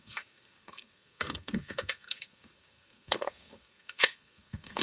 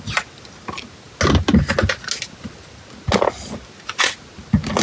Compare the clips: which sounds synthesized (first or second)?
first